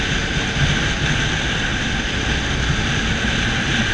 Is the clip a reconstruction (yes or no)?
no